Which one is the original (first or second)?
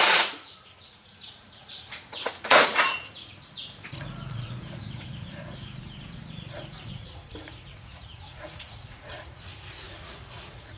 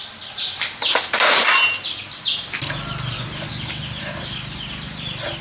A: second